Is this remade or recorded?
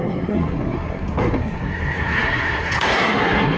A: remade